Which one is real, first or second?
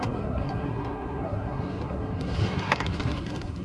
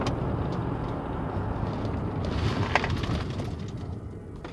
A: second